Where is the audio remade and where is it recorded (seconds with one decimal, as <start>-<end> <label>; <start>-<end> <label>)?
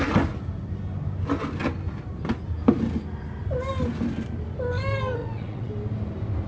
0.0-5.2 recorded; 5.2-5.7 remade; 5.7-6.5 recorded